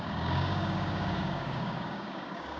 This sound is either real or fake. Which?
fake